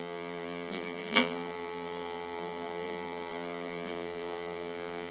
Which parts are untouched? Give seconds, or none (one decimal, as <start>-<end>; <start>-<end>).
none